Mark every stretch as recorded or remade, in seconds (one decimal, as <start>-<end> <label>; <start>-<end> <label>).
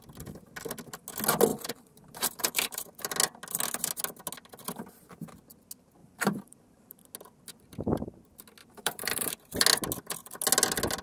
0.0-1.5 recorded; 1.5-2.9 remade; 2.9-6.0 recorded; 6.0-7.0 remade; 7.0-8.6 recorded; 8.6-9.5 remade; 9.5-11.0 recorded